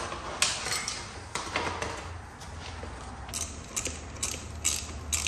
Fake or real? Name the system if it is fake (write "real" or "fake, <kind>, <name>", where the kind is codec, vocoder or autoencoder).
real